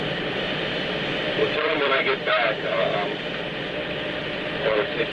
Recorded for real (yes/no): no